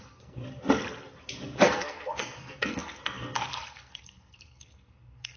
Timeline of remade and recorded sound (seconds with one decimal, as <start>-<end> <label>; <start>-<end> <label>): 0.0-0.4 remade; 0.4-1.6 recorded; 1.6-5.4 remade